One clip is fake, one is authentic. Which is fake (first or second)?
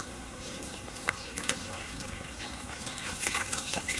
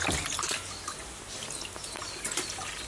first